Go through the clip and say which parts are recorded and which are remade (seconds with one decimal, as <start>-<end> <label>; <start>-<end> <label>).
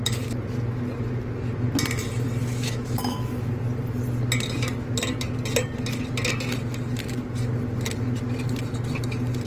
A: 0.0-2.4 recorded; 2.4-3.5 remade; 3.5-9.5 recorded